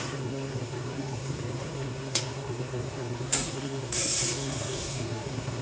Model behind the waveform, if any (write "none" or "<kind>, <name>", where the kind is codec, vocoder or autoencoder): codec, SNAC